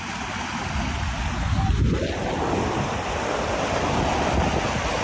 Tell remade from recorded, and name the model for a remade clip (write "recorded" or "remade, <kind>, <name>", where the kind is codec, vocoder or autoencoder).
recorded